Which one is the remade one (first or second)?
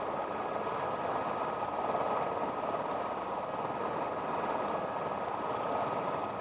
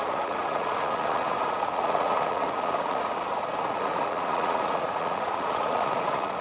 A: second